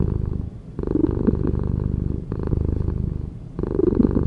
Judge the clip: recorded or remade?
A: recorded